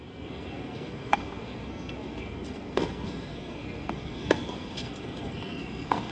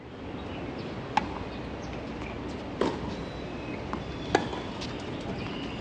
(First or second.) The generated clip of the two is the first